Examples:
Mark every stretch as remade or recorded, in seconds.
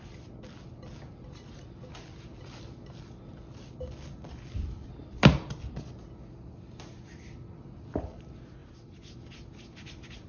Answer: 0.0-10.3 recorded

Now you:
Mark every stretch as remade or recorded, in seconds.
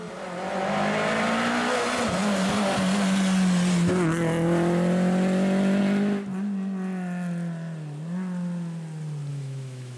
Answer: 0.0-9.3 recorded; 9.3-10.0 remade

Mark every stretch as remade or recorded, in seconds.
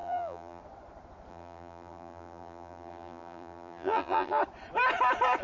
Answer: 0.0-0.6 remade; 0.6-1.3 recorded; 1.3-4.4 remade; 4.4-5.4 recorded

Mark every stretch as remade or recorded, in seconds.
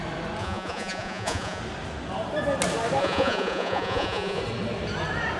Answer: 0.0-0.4 recorded; 0.4-1.6 remade; 1.6-3.0 recorded; 3.0-4.4 remade; 4.4-5.4 recorded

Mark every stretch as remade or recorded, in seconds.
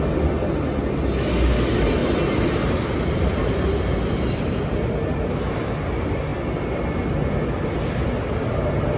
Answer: 0.0-9.0 recorded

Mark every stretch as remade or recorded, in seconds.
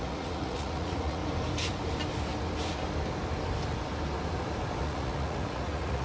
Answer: 0.0-1.2 remade; 1.2-4.8 recorded; 4.8-6.0 remade